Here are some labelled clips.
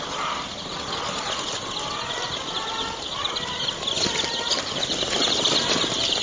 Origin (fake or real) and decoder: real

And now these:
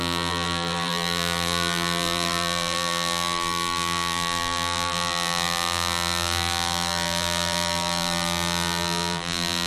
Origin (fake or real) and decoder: fake, vocoder, BigVGAN v2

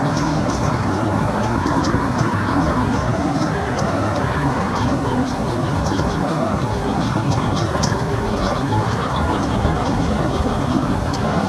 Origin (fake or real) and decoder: fake, codec, SNAC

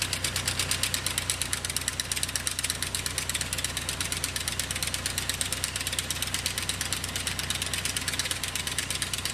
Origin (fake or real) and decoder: real